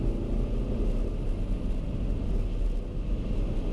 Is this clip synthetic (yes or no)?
no